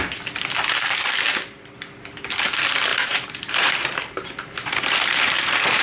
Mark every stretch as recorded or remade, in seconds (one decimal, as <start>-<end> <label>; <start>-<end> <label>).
0.0-2.9 recorded; 2.9-5.8 remade